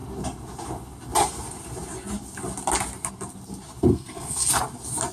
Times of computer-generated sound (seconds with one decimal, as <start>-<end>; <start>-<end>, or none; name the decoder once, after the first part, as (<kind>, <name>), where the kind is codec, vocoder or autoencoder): 3.9-4.5 (codec, SNAC)